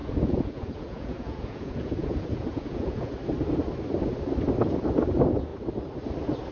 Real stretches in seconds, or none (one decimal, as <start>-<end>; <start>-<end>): 3.1-6.5